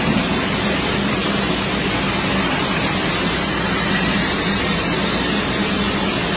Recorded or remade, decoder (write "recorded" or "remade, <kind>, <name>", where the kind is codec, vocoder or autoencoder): remade, vocoder, BigVGAN v2